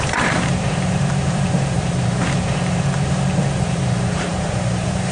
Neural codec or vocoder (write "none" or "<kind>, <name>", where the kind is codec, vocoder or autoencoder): vocoder, BigVGAN v2